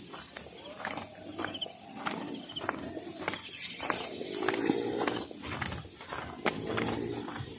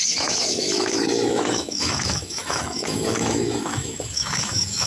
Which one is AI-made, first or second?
second